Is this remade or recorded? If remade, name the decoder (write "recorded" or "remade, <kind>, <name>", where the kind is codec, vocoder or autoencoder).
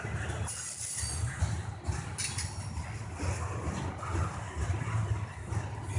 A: recorded